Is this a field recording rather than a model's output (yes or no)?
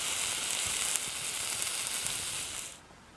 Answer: yes